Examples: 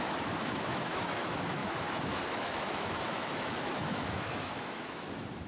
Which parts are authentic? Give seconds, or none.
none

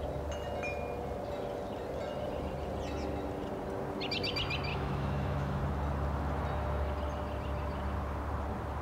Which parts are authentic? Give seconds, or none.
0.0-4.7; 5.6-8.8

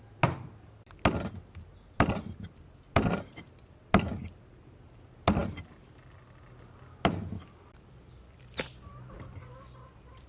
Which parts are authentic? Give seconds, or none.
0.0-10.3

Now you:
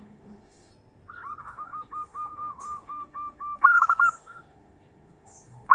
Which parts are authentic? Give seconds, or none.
0.7-1.4

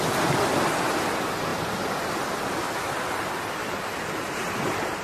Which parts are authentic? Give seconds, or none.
0.0-5.0